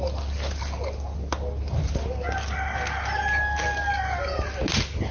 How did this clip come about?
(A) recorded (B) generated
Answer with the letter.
A